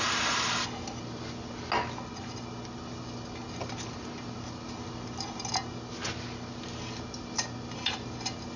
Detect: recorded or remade recorded